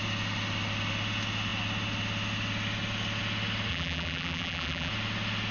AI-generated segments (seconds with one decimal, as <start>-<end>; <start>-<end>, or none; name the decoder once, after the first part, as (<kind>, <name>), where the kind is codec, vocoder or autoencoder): 3.7-4.9 (vocoder, BigVGAN v2)